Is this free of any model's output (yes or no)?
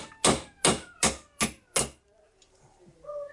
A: yes